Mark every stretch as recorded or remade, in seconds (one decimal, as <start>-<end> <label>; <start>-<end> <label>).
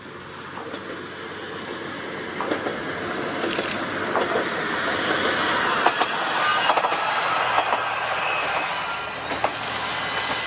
0.0-10.5 recorded